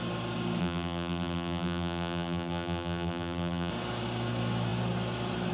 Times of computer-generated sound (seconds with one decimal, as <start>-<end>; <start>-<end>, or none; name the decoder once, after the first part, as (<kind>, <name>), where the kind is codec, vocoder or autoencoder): 0.6-3.7 (vocoder, BigVGAN v2)